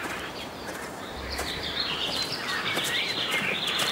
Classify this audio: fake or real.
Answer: fake